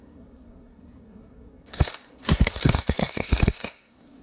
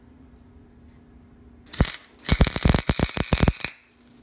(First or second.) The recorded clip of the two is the second